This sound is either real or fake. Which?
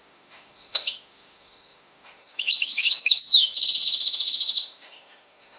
fake